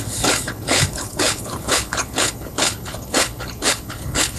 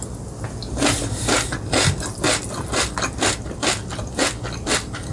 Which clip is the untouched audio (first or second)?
second